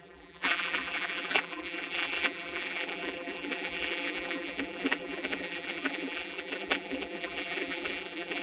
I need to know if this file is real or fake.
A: fake